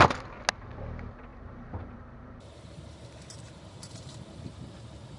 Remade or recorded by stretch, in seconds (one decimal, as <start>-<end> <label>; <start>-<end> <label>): 0.0-1.3 recorded; 1.3-4.4 remade; 4.4-5.2 recorded